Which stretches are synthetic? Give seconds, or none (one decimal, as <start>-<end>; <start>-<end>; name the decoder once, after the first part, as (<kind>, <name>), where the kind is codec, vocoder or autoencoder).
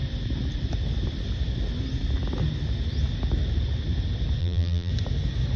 4.4-4.9 (vocoder, BigVGAN v2)